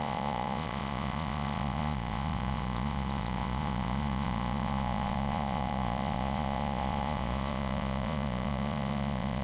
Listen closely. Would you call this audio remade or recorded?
remade